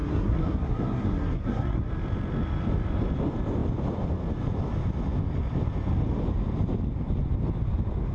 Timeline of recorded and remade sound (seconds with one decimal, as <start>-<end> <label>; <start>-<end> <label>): 0.0-1.9 remade; 1.9-8.1 recorded